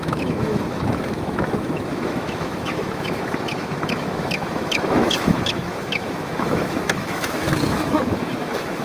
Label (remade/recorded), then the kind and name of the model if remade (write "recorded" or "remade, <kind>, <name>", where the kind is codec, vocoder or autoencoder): remade, autoencoder, DAC-VAE